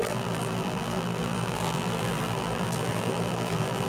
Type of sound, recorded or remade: remade